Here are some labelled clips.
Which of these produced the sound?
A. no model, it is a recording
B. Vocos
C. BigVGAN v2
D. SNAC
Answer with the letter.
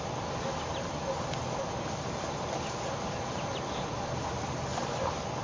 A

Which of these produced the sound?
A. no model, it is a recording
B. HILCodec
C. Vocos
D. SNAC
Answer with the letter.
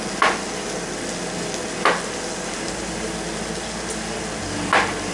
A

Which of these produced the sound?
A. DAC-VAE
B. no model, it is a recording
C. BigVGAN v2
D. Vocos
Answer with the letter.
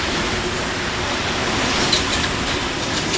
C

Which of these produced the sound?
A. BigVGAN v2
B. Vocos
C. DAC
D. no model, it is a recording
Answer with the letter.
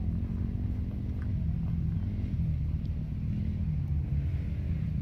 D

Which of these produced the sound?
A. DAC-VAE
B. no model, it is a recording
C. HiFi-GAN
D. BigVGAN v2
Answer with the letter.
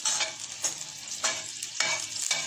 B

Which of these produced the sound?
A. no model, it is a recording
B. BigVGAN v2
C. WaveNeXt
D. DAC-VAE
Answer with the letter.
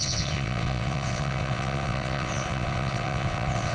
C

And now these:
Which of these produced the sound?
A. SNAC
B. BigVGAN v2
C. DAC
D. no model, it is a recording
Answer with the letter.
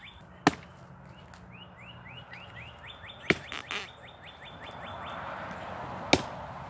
D